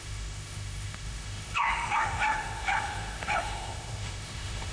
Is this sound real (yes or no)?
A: no